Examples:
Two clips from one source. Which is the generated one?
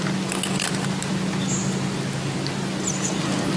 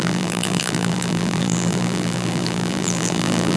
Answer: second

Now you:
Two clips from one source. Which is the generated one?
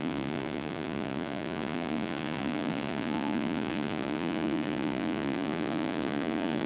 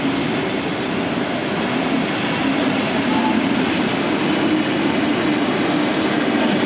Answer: first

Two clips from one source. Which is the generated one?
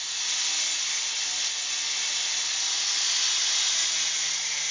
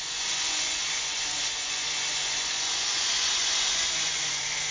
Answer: second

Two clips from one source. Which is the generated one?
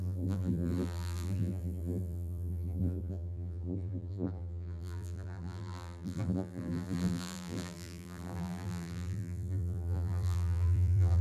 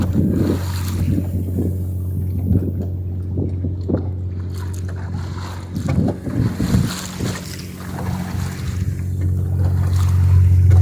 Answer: first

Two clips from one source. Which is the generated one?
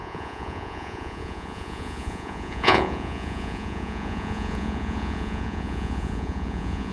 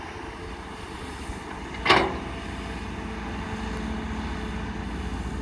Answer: first